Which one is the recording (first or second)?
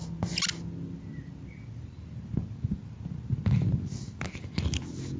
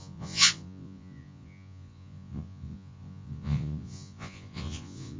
first